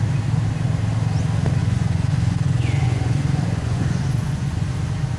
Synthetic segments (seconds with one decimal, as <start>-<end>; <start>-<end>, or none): 1.6-4.7